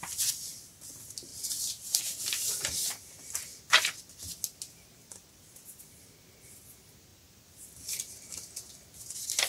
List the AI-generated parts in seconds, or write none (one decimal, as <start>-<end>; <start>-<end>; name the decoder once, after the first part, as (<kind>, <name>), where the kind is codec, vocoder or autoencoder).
none